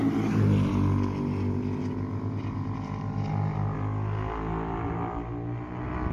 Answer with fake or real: real